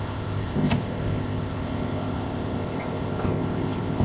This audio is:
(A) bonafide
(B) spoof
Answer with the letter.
B